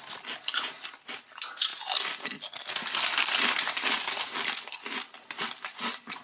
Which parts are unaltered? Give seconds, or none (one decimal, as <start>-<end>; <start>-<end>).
0.0-6.2